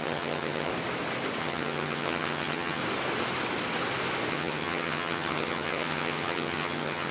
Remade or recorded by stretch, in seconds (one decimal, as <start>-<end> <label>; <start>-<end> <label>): 0.0-0.7 remade; 0.7-1.4 recorded; 1.4-2.8 remade; 2.8-4.3 recorded; 4.3-7.1 remade